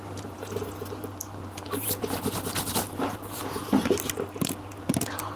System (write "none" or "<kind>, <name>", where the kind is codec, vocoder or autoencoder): vocoder, BigVGAN v2